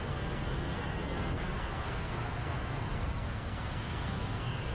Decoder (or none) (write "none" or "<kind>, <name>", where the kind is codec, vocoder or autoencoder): codec, SNAC